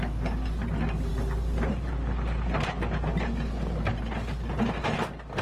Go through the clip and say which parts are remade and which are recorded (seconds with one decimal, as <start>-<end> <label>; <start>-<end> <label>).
0.0-5.4 recorded